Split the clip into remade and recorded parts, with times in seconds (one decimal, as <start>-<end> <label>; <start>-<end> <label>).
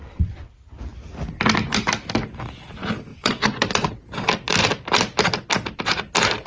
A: 0.0-0.5 remade; 0.5-3.1 recorded; 3.1-3.9 remade; 3.9-6.5 recorded